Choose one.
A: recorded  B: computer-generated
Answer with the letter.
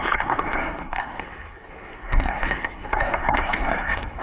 B